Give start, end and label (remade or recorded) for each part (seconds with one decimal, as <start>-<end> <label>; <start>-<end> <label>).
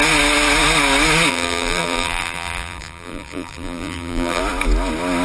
0.0-1.3 recorded; 1.3-4.4 remade; 4.4-5.2 recorded